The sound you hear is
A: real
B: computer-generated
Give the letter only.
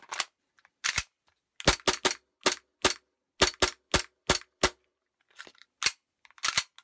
A